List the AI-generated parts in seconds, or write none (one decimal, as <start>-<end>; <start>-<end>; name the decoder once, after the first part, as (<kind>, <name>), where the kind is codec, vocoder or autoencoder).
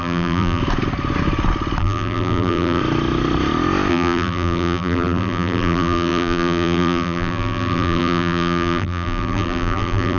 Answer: 0.0-0.6 (vocoder, BigVGAN v2); 1.8-2.8; 3.9-10.2